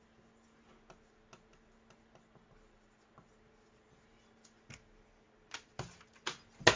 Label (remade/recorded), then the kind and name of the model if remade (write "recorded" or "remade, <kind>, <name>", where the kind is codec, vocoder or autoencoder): recorded